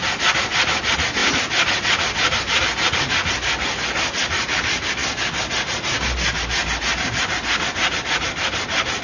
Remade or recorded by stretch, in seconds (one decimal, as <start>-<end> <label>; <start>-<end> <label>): 0.0-9.0 recorded